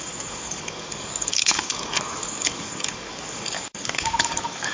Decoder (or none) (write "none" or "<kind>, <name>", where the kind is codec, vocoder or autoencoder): codec, DAC